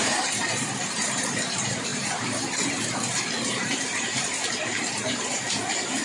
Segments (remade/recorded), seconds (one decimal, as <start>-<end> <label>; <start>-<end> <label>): 0.0-6.0 remade